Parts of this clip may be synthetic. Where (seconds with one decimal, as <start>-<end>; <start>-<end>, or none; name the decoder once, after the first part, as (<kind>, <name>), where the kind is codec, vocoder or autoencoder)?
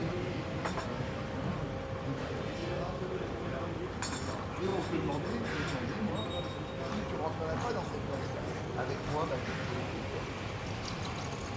none